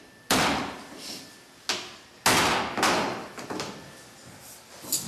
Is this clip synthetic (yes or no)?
no